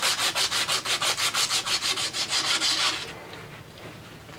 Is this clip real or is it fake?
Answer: real